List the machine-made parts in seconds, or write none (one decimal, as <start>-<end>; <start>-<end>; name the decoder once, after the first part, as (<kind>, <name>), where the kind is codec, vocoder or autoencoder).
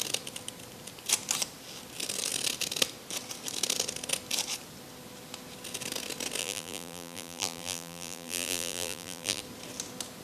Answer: 6.4-9.4 (vocoder, BigVGAN v2)